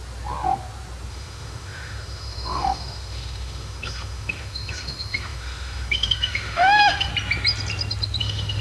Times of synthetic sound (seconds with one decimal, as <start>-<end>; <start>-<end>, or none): 1.1-7.1; 8.2-8.6